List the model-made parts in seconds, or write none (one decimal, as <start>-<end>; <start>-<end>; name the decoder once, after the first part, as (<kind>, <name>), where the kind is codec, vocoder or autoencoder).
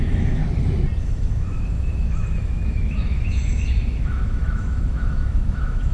0.0-0.4 (autoencoder, DAC-VAE); 1.0-5.9